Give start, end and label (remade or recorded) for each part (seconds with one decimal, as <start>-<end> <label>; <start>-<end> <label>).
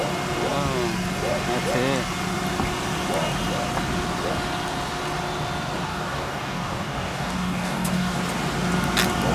0.0-5.9 recorded; 5.9-8.2 remade; 8.2-9.3 recorded